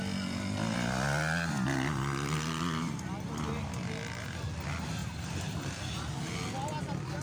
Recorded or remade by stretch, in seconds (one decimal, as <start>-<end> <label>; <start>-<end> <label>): 0.0-5.0 recorded; 5.0-6.1 remade; 6.1-7.2 recorded